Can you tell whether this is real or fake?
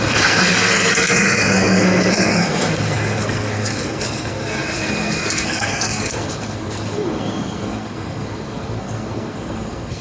fake